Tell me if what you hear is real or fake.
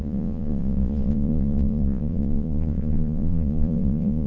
fake